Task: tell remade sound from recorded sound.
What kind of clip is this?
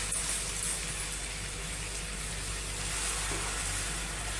recorded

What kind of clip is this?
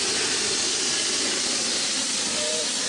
recorded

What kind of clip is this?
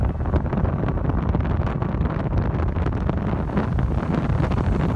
recorded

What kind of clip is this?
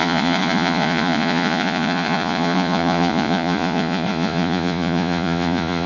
remade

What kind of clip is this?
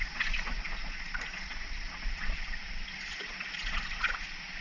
remade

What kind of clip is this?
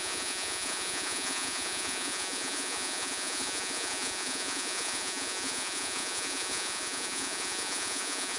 remade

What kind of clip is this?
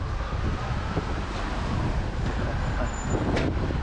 recorded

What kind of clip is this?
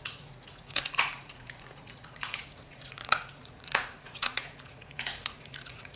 remade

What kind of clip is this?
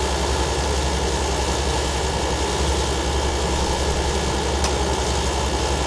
recorded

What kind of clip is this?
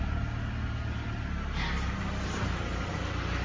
recorded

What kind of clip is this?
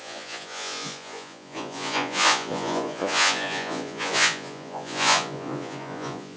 remade